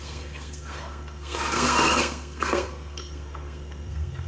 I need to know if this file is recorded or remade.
remade